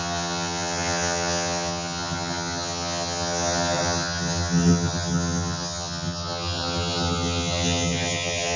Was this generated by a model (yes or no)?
yes